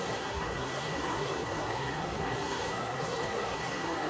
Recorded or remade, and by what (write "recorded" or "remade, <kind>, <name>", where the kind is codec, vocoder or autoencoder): remade, codec, SNAC